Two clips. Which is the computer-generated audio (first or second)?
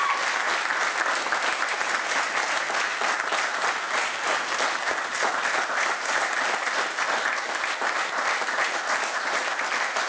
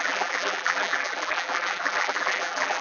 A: second